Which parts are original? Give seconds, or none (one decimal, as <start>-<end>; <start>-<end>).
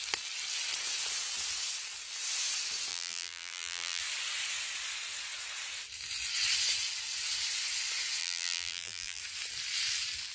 0.0-2.9; 4.0-8.2; 9.2-10.3